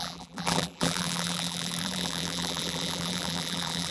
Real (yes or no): no